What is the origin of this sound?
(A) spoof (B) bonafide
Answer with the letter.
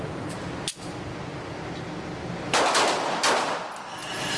B